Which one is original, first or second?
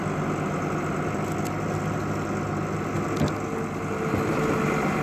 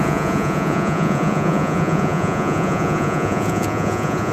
first